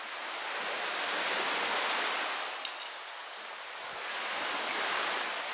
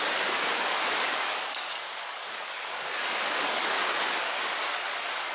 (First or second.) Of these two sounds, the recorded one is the first